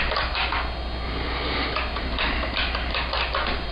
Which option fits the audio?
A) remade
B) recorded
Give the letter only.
B